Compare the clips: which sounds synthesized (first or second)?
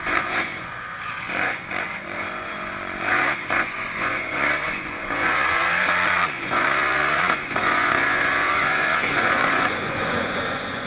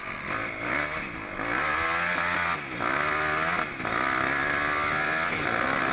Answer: first